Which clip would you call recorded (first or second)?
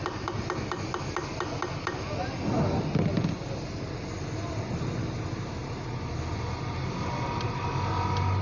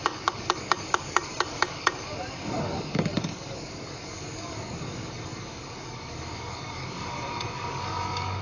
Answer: first